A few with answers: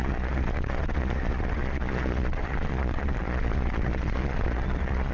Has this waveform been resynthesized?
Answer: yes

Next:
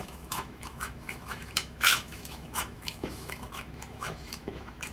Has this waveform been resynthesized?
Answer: yes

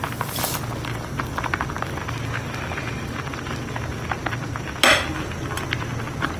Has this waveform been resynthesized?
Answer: no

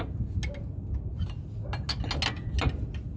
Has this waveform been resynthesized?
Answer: no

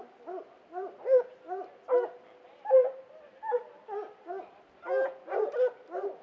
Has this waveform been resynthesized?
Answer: no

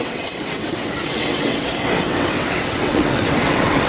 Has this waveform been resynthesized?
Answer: yes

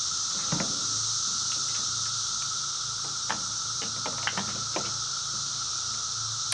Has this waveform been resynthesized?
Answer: no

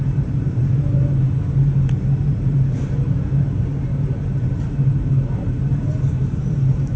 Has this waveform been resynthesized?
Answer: yes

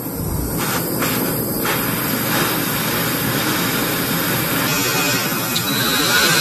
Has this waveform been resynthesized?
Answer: no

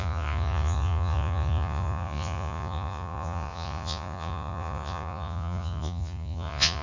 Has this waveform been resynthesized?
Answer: yes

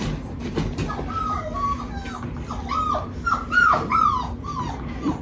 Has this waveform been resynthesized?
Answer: no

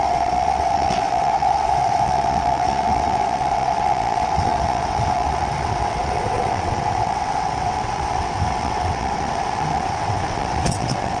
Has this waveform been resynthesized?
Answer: yes